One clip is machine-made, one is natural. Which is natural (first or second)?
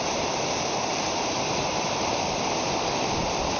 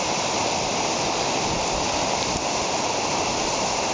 second